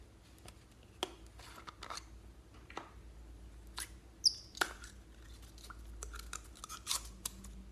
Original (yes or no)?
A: yes